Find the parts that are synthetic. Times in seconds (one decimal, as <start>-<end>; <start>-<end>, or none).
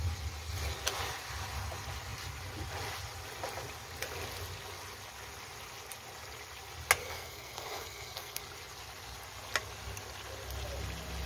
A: 7.0-8.4